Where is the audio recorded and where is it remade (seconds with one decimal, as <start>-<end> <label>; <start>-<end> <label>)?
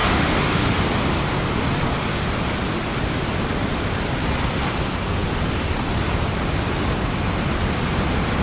0.0-0.8 remade; 0.8-8.4 recorded